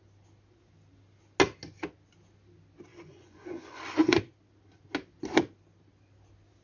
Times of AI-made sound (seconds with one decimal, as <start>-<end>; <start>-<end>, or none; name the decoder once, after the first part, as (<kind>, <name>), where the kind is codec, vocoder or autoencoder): 2.9-4.2 (vocoder, Vocos)